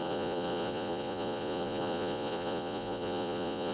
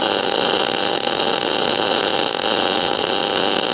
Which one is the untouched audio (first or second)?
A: second